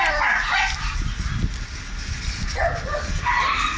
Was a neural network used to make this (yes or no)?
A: no